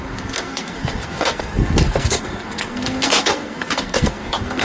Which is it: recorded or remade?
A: remade